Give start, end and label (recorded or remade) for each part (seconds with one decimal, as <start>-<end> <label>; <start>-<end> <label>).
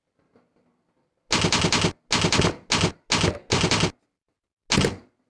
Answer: 0.0-5.3 recorded